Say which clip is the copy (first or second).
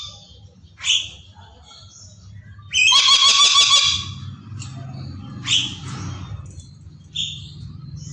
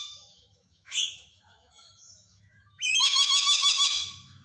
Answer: second